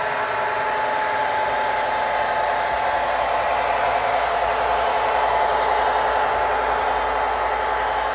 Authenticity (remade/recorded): recorded